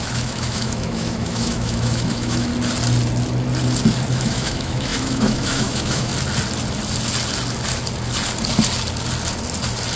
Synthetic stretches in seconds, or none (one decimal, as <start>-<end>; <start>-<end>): 0.0-2.5; 4.1-6.1